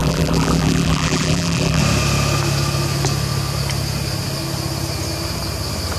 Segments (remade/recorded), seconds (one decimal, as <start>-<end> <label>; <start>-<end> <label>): 0.0-1.8 remade; 1.8-6.0 recorded